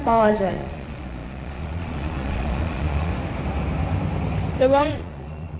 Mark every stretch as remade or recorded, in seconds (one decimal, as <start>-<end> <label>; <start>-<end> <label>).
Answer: 0.0-3.1 remade; 3.1-4.8 recorded; 4.8-5.6 remade